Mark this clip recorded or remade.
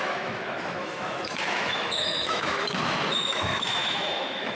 remade